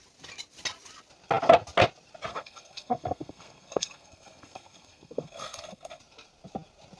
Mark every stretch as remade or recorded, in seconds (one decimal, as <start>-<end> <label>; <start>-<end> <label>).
0.0-2.3 recorded; 2.3-6.0 remade; 6.0-7.0 recorded